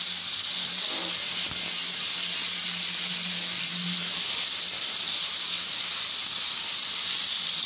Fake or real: real